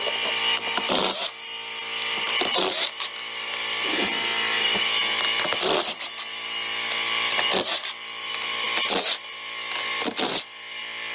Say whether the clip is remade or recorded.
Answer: recorded